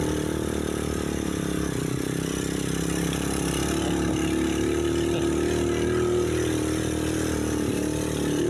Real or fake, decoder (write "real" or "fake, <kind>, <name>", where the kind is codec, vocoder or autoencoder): real